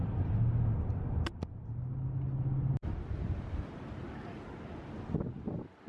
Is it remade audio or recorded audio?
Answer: recorded